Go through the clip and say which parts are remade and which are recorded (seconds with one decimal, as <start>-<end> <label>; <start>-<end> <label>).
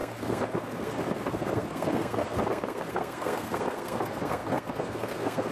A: 0.0-5.5 remade